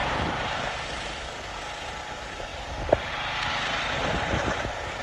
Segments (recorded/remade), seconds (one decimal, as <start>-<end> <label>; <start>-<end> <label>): 0.0-2.1 recorded; 2.1-5.0 remade